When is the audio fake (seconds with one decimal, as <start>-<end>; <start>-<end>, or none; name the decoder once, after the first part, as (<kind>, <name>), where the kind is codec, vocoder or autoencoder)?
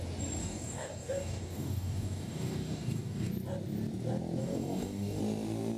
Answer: 0.4-3.3 (codec, DAC); 4.4-5.2